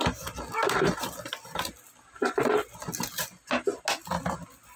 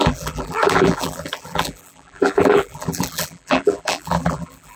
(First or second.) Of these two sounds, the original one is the first